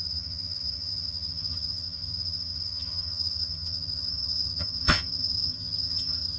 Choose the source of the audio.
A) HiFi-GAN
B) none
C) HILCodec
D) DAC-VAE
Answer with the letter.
A